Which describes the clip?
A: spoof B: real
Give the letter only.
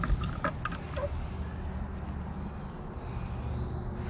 B